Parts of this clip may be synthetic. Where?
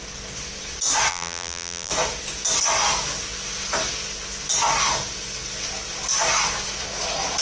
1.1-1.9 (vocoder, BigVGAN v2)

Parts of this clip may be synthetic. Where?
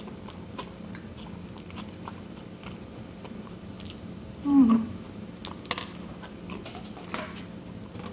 3.2-5.4 (vocoder, BigVGAN v2)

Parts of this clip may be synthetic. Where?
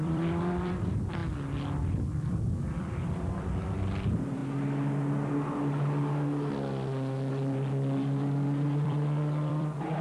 0.0-1.2 (vocoder, BigVGAN v2); 2.3-4.4; 7.3-10.0